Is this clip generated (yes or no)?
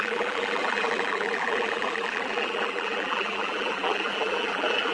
yes